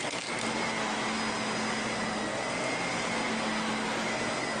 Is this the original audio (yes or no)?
yes